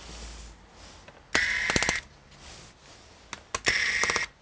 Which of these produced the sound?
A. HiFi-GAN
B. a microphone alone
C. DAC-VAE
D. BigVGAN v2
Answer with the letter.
B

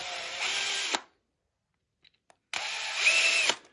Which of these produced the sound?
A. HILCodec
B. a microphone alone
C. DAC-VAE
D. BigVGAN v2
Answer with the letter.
B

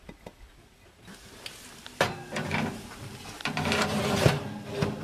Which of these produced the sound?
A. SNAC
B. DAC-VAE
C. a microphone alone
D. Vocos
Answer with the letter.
C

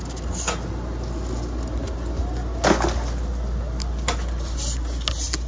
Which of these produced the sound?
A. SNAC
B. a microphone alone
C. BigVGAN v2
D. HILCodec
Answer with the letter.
B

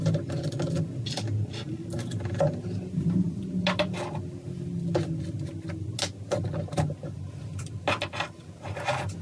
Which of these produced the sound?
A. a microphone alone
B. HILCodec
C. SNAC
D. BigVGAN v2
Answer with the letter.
A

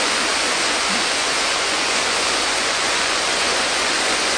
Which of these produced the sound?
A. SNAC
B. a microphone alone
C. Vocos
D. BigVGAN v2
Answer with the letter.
C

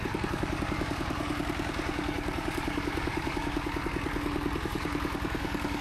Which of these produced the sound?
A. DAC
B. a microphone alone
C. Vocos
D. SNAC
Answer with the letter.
A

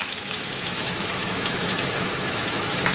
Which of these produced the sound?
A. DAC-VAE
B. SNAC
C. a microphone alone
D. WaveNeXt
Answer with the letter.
A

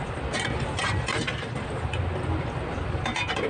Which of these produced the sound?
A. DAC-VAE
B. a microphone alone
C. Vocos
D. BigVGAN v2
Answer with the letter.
B